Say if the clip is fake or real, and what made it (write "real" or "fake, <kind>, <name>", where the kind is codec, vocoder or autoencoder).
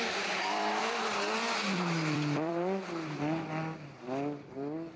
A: fake, vocoder, BigVGAN v2